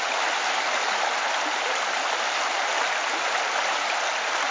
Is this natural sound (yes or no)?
yes